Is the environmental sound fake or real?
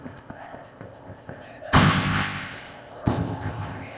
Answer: fake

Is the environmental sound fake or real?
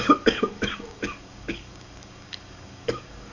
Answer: fake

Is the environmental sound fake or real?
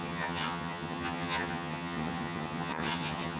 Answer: fake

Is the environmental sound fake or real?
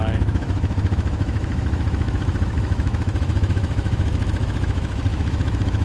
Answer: fake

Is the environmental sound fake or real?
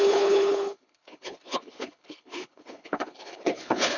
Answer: fake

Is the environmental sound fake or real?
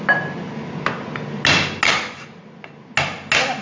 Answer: real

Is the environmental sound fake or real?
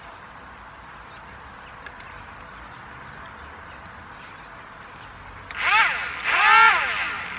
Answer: real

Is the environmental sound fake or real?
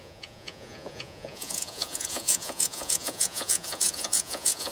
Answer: fake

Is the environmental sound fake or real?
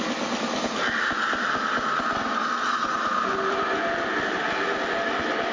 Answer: real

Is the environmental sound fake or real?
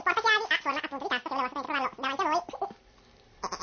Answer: real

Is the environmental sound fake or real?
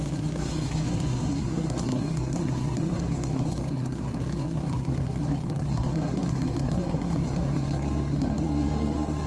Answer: fake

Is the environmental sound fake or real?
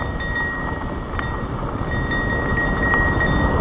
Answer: real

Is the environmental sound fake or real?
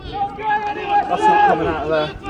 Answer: real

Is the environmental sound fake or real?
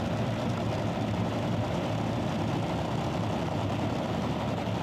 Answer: real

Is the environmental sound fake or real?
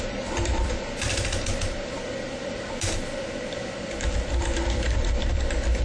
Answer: fake